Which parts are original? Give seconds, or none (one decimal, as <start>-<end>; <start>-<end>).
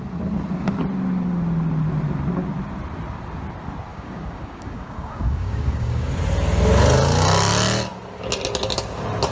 0.0-3.9; 6.1-9.3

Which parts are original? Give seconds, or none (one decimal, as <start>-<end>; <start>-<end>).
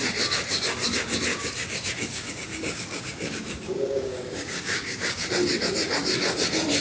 0.0-1.3; 5.3-6.8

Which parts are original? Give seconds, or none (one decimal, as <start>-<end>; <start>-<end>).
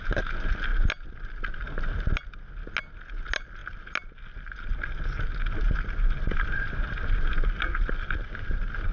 0.0-8.9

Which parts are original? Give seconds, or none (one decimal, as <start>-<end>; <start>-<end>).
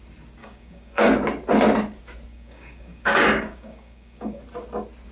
0.0-0.4; 1.1-2.3; 4.4-5.1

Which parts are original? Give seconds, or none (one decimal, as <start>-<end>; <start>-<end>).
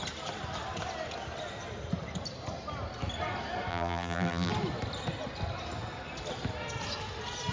0.0-3.7; 4.5-7.5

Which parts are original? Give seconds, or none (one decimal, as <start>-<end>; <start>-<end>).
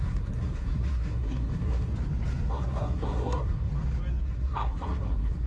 1.9-2.5; 3.7-4.2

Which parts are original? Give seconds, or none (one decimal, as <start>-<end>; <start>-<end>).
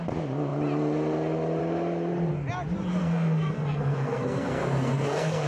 0.0-3.0